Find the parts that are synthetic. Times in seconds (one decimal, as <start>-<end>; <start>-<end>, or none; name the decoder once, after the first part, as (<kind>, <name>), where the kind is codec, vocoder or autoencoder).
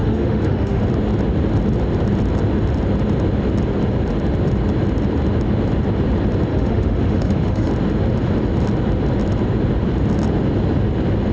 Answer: 0.0-0.8 (autoencoder, DAC-VAE); 6.5-7.7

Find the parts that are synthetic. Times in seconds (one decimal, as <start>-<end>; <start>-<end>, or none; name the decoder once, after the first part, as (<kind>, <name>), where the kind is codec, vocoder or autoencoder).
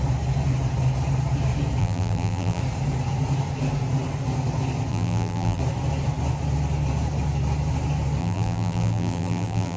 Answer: 1.8-2.6 (vocoder, BigVGAN v2); 4.9-5.6; 8.2-9.8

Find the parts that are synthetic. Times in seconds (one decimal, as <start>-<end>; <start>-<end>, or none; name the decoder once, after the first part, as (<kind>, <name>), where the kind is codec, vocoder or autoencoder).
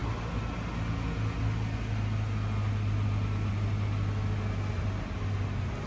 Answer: none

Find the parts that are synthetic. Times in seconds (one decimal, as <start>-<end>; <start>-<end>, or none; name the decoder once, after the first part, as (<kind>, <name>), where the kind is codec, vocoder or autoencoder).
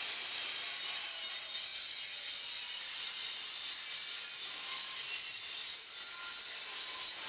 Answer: none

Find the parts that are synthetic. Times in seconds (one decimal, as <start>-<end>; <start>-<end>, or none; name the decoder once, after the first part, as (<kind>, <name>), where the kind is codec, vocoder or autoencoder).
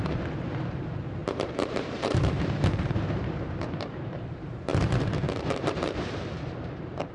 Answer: 0.0-7.1 (vocoder, BigVGAN v2)